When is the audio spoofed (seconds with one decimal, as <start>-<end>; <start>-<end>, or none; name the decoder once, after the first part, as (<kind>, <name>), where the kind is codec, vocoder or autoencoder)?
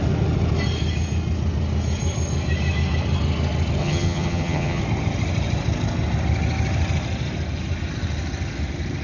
3.8-4.8 (vocoder, HiFi-GAN)